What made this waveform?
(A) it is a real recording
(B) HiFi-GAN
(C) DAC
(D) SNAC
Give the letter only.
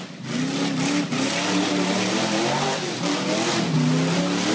A